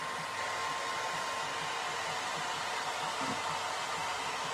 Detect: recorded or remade recorded